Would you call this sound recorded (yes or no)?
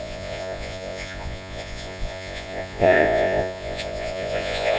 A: no